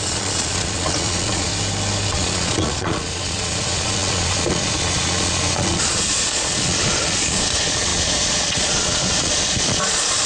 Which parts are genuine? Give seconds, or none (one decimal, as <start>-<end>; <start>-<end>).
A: 1.5-2.1